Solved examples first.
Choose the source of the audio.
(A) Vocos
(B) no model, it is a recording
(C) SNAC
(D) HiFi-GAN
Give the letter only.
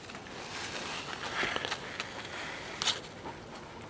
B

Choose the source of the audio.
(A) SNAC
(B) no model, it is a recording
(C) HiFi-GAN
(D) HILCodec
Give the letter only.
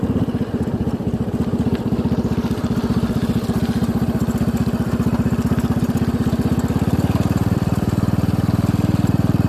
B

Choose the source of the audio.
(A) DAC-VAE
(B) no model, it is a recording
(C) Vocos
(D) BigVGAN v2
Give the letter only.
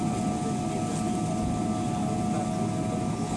B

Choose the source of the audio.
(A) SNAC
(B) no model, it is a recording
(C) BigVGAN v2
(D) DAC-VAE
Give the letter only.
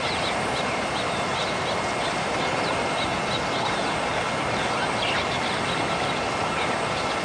B